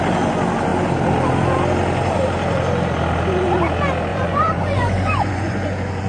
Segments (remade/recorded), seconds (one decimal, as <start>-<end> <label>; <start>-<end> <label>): 0.0-4.1 recorded; 4.1-6.1 remade